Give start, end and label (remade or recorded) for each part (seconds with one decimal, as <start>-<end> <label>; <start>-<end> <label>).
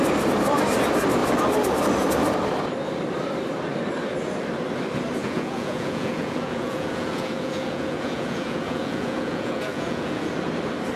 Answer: 0.0-5.2 recorded; 5.2-10.3 remade; 10.3-11.0 recorded